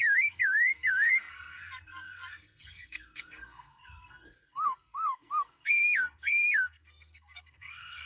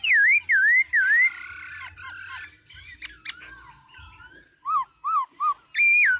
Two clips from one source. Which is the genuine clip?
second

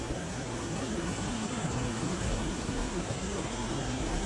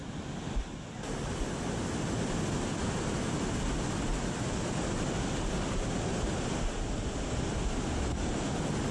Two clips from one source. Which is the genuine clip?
second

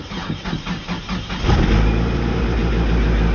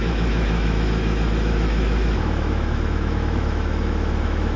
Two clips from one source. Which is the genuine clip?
first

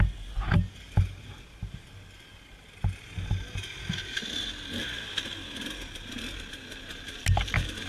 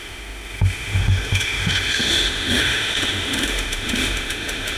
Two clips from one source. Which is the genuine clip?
first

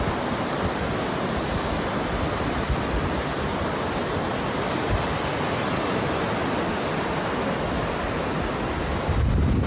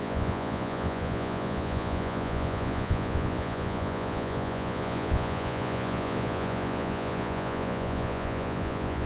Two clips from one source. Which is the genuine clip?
first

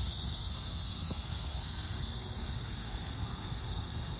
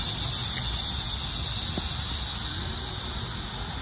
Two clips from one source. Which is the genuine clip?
second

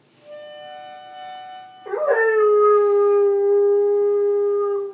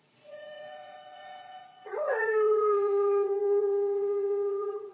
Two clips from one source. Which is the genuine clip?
first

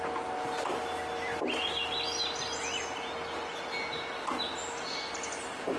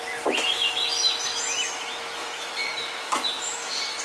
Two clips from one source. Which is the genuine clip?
first